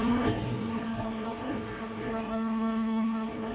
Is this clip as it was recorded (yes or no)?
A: no